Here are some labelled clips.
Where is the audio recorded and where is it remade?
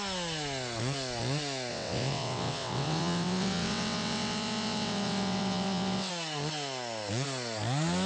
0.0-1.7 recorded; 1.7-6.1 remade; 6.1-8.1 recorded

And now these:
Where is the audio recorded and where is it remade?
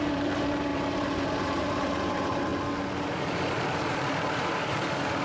0.0-2.5 remade; 2.5-3.1 recorded; 3.1-5.2 remade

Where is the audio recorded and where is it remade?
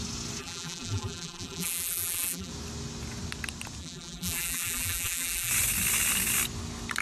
0.0-0.4 recorded; 0.4-2.5 remade; 2.5-3.8 recorded; 3.8-5.5 remade; 5.5-7.0 recorded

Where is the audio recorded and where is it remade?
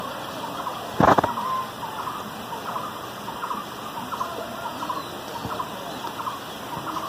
0.0-2.8 recorded; 2.8-3.8 remade; 3.8-7.1 recorded